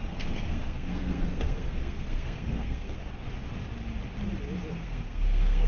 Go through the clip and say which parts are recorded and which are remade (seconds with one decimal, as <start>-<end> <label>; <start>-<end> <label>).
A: 0.0-3.0 remade; 3.0-4.7 recorded; 4.7-5.7 remade